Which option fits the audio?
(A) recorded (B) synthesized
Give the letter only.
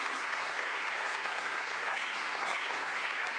B